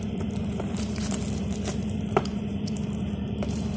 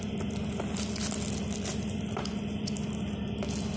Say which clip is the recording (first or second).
second